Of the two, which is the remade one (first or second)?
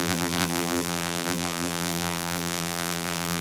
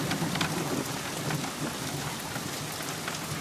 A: first